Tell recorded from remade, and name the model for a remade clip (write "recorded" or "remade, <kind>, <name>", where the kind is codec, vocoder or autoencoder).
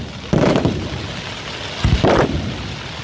recorded